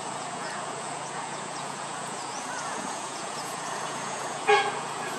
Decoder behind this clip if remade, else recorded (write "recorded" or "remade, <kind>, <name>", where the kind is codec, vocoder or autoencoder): remade, vocoder, Vocos